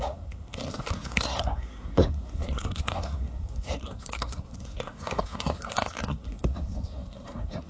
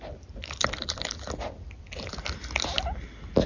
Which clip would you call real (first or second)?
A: second